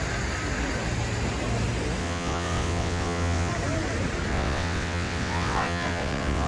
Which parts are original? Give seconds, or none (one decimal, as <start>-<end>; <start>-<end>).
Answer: 0.0-2.0; 3.5-4.3